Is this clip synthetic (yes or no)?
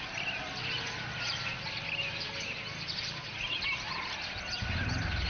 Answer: no